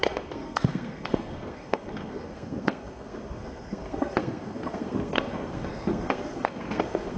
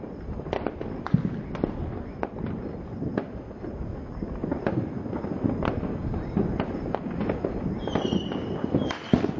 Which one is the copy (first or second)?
first